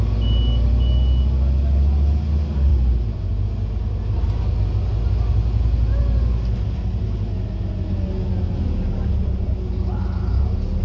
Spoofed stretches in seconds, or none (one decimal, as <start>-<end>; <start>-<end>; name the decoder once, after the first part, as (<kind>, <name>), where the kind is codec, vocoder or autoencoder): none